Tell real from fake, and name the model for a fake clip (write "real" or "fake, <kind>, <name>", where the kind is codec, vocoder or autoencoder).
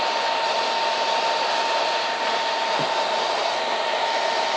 real